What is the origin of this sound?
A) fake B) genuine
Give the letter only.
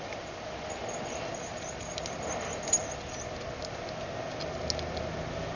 B